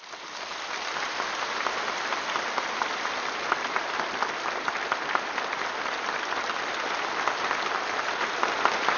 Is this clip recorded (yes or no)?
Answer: yes